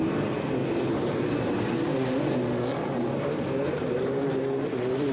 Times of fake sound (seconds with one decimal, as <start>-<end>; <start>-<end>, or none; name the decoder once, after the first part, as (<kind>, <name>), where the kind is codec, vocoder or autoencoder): 0.6-2.2 (vocoder, BigVGAN v2); 2.8-4.4